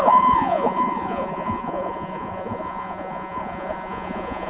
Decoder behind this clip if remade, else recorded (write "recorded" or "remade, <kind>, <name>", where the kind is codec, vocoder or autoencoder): remade, vocoder, Vocos